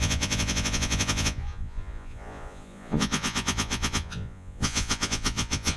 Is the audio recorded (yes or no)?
no